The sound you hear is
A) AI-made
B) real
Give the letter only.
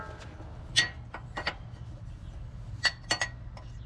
B